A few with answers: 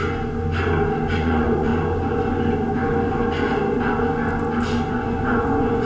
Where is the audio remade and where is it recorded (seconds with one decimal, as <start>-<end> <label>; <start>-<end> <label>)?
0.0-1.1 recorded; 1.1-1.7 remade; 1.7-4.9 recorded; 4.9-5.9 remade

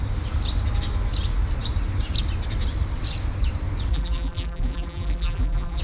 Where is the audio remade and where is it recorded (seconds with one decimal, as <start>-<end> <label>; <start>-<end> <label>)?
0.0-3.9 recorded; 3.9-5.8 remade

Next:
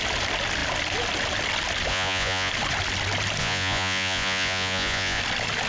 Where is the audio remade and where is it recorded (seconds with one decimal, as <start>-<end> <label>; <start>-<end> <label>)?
0.0-1.9 recorded; 1.9-2.5 remade; 2.5-3.4 recorded; 3.4-5.2 remade; 5.2-5.7 recorded

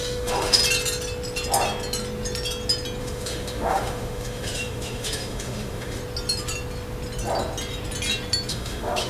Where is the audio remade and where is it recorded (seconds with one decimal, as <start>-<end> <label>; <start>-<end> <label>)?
0.0-0.6 remade; 0.6-3.0 recorded; 3.0-6.0 remade; 6.0-8.5 recorded; 8.5-9.1 remade